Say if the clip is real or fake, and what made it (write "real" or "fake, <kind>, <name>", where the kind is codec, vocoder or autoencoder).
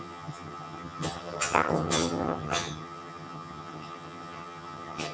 fake, vocoder, HiFi-GAN